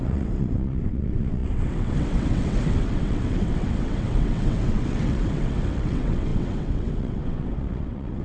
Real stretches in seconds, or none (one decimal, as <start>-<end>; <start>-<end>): none